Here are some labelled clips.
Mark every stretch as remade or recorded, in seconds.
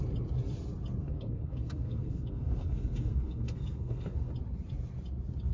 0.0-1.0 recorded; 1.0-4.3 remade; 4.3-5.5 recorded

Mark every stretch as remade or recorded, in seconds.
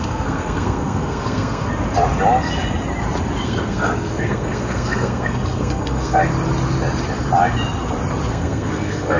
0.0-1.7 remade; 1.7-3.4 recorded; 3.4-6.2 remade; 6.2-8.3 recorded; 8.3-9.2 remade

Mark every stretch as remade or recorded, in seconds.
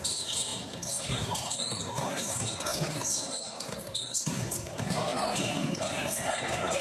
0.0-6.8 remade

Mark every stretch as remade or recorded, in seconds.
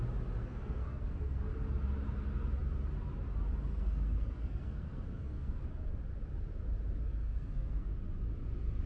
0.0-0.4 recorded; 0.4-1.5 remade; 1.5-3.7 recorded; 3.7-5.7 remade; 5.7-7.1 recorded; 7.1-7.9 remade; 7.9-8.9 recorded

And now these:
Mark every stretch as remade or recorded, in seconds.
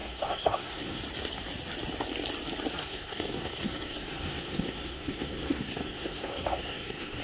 0.0-1.0 remade; 1.0-2.8 recorded; 2.8-7.2 remade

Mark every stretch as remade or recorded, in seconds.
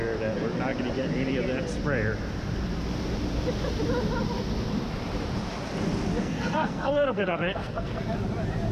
0.0-6.2 recorded; 6.2-8.0 remade; 8.0-8.7 recorded